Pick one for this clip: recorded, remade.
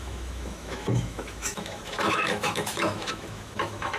remade